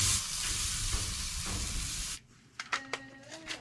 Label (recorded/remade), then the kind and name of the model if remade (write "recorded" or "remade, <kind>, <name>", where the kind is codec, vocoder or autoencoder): recorded